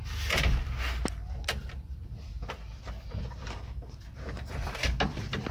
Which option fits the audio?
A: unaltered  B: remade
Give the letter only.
A